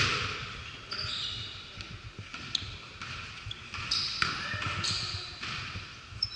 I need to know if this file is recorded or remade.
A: recorded